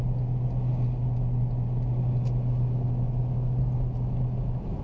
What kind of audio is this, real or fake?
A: real